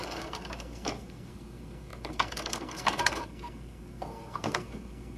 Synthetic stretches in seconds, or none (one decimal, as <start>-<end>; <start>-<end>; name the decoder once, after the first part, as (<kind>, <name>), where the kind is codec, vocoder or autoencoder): 0.0-5.2 (codec, SNAC)